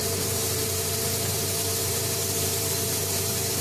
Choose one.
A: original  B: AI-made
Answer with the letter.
B